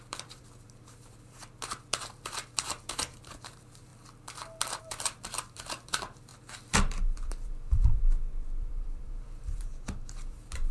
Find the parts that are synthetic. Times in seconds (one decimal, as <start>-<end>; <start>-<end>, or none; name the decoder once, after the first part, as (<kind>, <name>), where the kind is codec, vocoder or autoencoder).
0.0-3.9 (vocoder, BigVGAN v2); 4.8-10.7